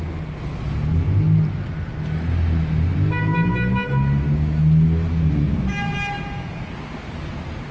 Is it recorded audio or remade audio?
recorded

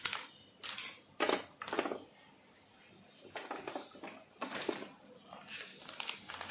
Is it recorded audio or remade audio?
recorded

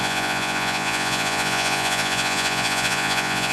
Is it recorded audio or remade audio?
remade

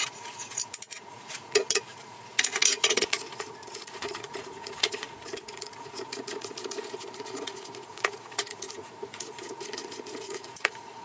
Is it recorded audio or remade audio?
remade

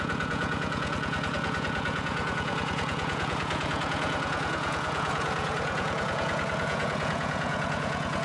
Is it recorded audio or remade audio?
remade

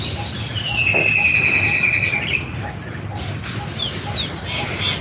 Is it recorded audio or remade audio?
recorded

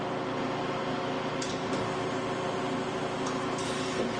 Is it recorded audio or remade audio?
recorded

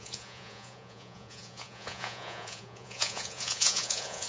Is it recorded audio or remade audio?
remade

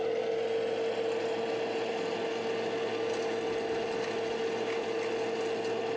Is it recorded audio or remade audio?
recorded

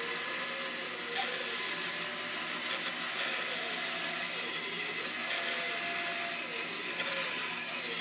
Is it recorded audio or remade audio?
recorded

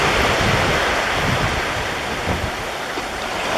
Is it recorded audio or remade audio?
recorded